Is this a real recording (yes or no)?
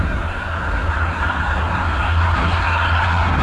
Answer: no